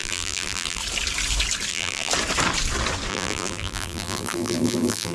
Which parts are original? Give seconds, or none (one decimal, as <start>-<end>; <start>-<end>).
0.8-1.7; 2.1-3.1